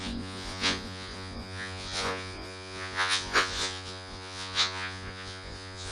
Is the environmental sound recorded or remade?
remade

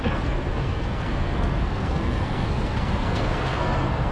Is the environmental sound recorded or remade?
remade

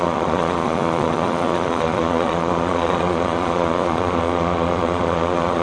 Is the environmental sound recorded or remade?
remade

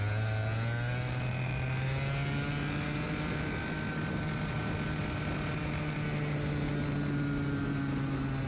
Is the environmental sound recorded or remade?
recorded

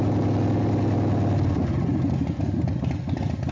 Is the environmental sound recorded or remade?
recorded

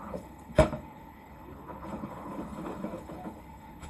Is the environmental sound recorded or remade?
remade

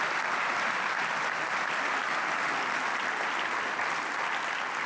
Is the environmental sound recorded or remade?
recorded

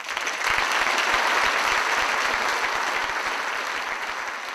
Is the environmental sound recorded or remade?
recorded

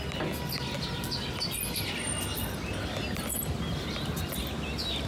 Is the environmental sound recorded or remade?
recorded